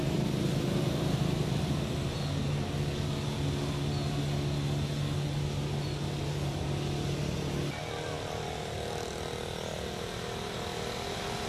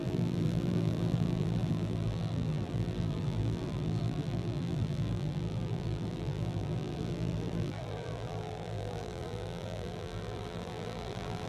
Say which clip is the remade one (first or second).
second